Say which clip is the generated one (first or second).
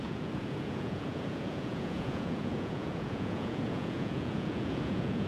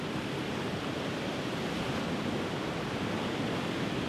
first